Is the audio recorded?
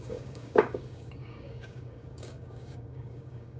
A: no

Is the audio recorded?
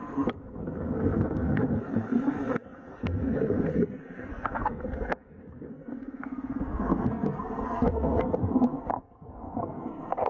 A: no